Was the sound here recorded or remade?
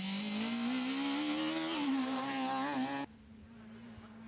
recorded